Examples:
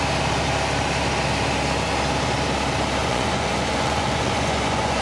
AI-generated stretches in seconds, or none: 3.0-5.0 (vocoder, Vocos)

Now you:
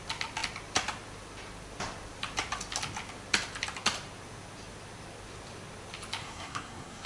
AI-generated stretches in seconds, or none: 6.2-7.1 (codec, SNAC)

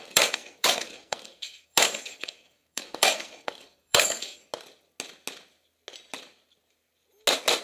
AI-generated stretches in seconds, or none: 0.0-4.4 (codec, SNAC)

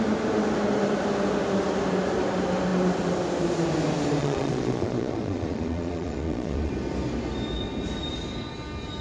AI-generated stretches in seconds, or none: 4.2-6.7 (vocoder, Vocos)

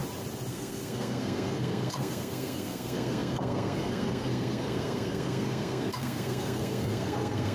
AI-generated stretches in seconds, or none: 0.5-7.5 (codec, SNAC)

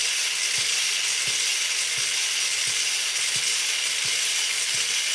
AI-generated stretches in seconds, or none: none

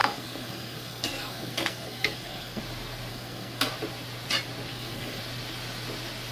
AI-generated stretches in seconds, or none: 0.0-2.6 (codec, SNAC); 3.1-3.7; 4.7-5.2

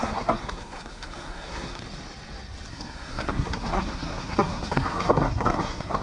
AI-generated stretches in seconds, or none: 0.0-1.8 (codec, SNAC); 2.7-6.0